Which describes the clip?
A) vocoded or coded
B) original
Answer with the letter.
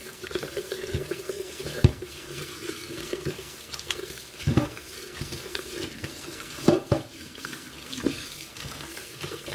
A